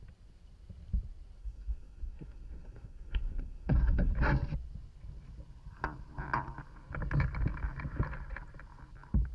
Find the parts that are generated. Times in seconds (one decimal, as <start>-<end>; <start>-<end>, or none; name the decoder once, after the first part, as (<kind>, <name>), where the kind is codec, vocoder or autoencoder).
1.4-4.1 (codec, SNAC)